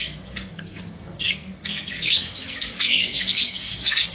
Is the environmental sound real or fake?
fake